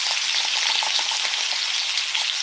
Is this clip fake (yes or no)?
no